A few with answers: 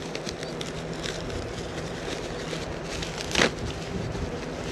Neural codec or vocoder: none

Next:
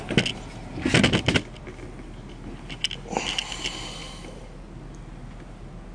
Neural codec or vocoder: none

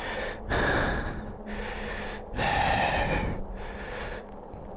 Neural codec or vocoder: none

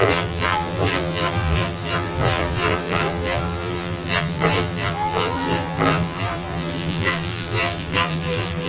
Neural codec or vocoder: vocoder, BigVGAN v2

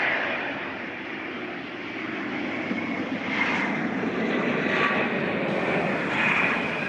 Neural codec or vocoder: vocoder, BigVGAN v2